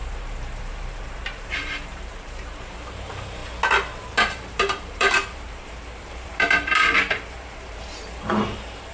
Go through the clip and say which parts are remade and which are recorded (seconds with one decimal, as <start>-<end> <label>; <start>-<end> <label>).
0.0-3.4 remade; 3.4-4.3 recorded; 4.3-8.9 remade